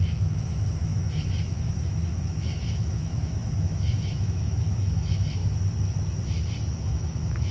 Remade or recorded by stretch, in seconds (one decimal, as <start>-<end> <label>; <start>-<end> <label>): 0.0-5.4 remade; 5.4-6.8 recorded; 6.8-7.5 remade